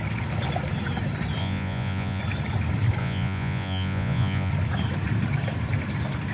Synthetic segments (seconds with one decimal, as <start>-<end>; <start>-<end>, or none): 1.4-2.2; 3.0-4.5